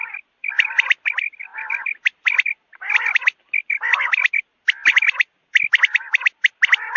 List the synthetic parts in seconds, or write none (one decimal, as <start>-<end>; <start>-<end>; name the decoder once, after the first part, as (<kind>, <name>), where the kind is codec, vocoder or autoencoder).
none